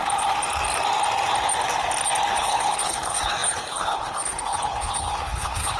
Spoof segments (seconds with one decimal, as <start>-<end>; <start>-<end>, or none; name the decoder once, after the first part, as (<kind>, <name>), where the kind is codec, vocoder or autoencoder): 2.3-5.8 (codec, HILCodec)